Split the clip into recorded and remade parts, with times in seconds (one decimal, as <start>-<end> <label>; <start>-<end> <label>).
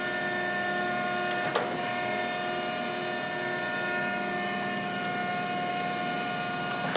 0.0-7.0 recorded